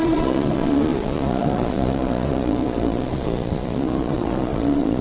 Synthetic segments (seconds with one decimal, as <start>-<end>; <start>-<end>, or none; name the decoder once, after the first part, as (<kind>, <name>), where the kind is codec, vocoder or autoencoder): 0.0-5.0 (vocoder, Vocos)